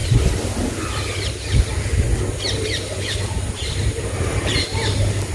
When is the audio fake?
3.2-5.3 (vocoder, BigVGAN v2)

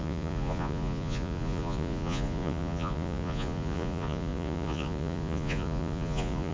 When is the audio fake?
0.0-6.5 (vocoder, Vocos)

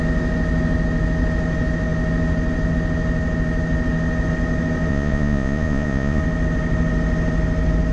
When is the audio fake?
4.9-6.2 (vocoder, Vocos)